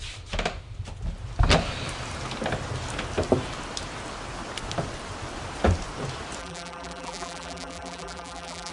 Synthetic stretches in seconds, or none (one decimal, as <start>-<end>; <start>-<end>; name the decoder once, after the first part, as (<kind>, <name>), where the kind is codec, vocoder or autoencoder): 6.4-8.7 (vocoder, BigVGAN v2)